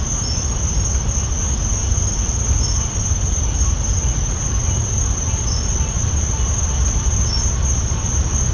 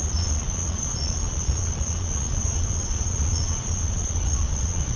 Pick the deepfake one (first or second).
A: second